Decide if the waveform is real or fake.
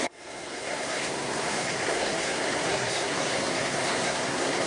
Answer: fake